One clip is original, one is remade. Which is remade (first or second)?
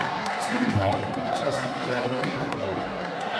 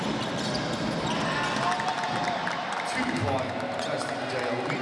first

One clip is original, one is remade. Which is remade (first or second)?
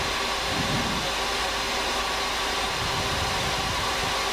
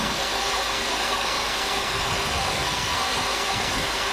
second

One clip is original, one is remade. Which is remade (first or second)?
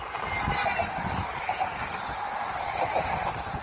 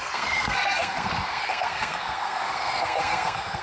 second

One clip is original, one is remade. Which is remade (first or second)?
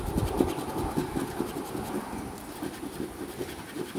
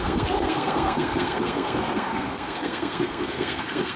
second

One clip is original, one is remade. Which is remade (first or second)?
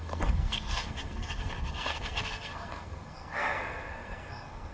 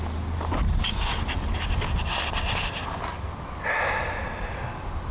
first